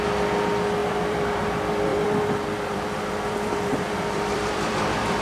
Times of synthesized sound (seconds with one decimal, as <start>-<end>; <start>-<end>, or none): 0.8-1.3; 1.9-5.2